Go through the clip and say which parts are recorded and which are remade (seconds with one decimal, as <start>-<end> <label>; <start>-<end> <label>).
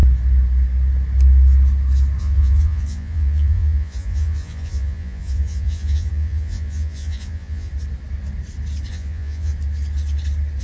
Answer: 0.0-2.2 recorded; 2.2-7.7 remade; 7.7-8.9 recorded; 8.9-9.5 remade; 9.5-10.6 recorded